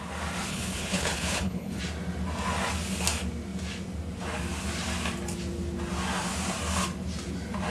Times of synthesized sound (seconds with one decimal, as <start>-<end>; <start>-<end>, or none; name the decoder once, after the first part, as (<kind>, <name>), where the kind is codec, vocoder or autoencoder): 0.5-1.8 (codec, HILCodec)